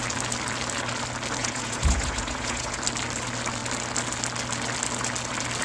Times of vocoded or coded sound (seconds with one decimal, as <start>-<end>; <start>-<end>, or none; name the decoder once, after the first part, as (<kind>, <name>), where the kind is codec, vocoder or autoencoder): 1.4-2.8 (vocoder, Vocos)